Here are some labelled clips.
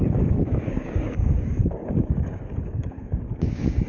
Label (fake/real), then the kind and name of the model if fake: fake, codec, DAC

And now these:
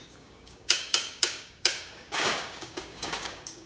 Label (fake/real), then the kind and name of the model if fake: fake, codec, DAC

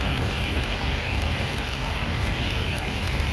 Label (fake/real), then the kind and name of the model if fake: fake, codec, DAC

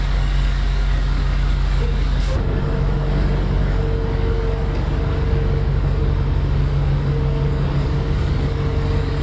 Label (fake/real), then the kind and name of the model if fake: fake, codec, DAC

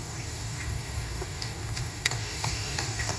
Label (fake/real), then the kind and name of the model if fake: fake, codec, DAC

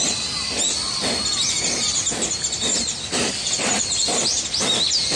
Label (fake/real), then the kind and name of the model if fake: real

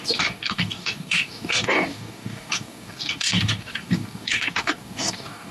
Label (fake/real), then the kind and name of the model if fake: fake, codec, DAC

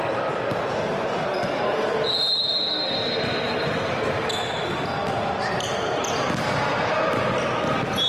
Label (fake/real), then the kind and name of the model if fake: real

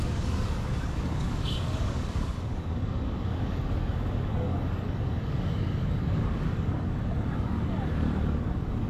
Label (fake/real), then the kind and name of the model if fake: fake, codec, DAC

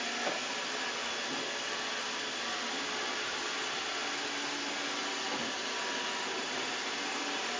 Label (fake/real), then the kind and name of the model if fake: real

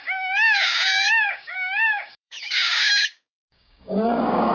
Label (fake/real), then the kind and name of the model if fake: fake, codec, DAC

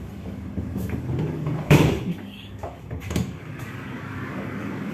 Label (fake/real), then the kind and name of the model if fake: fake, codec, DAC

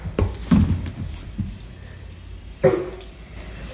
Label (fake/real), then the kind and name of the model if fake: real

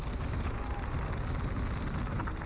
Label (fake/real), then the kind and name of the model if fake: real